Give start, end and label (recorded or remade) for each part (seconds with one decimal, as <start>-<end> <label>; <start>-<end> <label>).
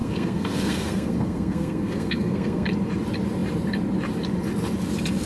0.0-2.7 remade; 2.7-5.3 recorded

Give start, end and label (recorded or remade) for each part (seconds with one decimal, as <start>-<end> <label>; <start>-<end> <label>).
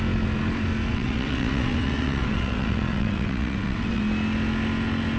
0.0-0.9 recorded; 0.9-4.0 remade; 4.0-5.2 recorded